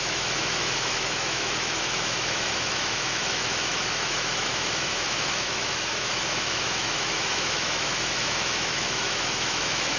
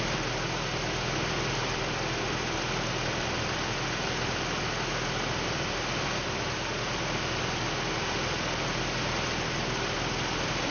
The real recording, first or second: second